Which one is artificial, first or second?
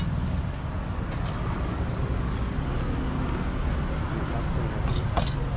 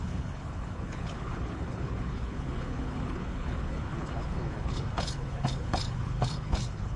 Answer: second